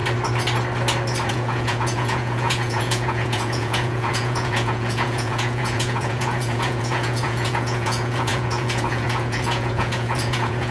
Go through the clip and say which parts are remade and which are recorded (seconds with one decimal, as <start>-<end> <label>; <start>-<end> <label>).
0.0-1.3 recorded; 1.3-10.7 remade